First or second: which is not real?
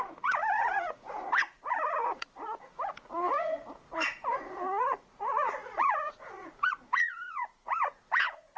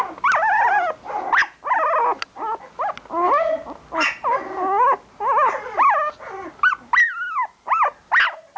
first